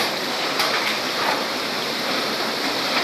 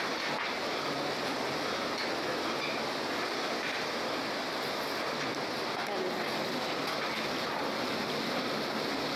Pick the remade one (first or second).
first